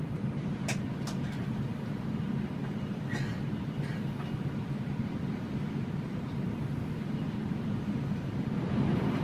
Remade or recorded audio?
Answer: recorded